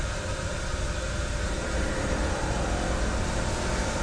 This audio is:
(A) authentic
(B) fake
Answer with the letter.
A